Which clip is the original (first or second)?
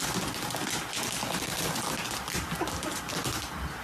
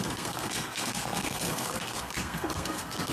first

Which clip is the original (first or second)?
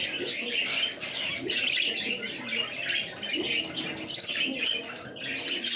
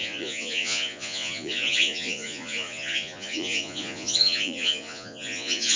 first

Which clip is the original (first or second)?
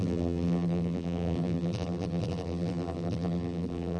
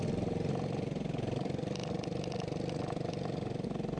second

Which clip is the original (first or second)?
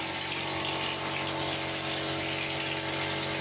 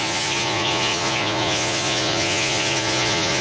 first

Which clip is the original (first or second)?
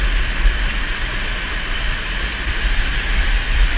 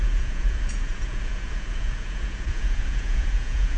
first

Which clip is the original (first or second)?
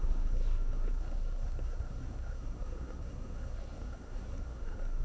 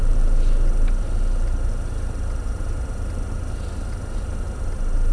second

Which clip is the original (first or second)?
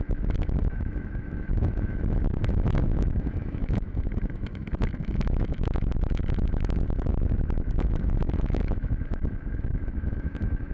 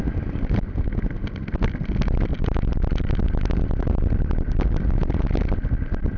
second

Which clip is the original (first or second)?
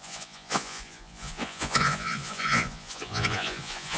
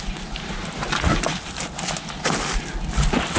second